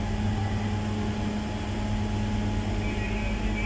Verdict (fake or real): real